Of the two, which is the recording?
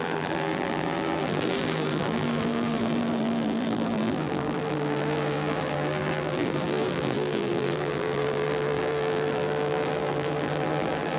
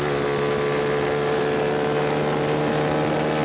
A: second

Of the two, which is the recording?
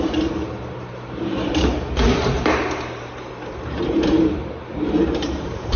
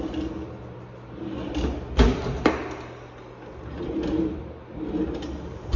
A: second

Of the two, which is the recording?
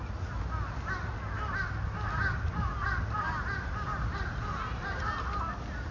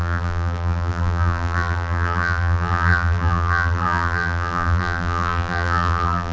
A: first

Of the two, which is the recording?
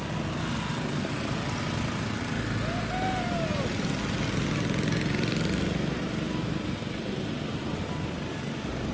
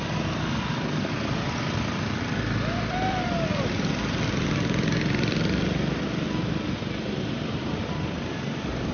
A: first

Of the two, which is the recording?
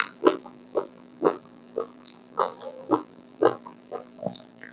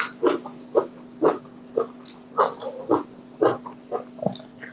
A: second